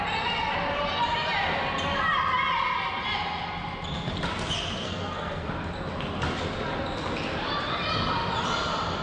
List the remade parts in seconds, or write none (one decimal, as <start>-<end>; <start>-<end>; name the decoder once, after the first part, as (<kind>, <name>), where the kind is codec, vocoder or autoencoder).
4.8-5.5 (codec, SNAC)